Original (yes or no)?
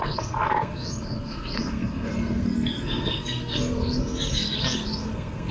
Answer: no